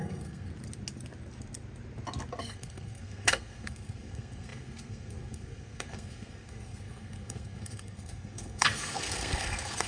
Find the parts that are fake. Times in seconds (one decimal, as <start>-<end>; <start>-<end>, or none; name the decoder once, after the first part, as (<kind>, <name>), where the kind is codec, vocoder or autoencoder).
0.0-0.5 (codec, SNAC); 2.4-9.9